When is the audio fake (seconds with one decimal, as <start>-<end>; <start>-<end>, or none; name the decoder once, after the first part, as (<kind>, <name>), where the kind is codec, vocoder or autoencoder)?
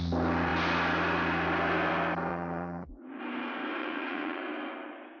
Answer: 2.3-3.2 (vocoder, Vocos); 3.8-4.4